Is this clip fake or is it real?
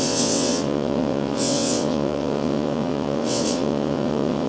fake